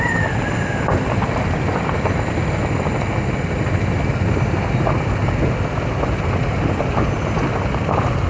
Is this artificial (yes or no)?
no